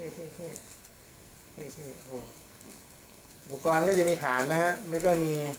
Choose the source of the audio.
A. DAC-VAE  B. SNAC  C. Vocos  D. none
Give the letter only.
B